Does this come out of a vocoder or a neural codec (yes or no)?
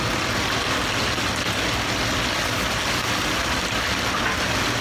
no